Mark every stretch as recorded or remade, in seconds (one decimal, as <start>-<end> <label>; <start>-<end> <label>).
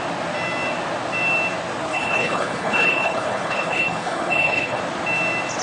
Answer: 0.0-1.9 recorded; 1.9-4.8 remade; 4.8-5.6 recorded